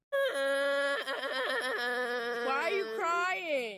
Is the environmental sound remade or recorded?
recorded